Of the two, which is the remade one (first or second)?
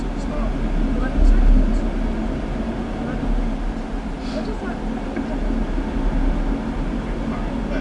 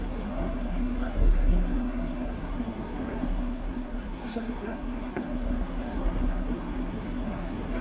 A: second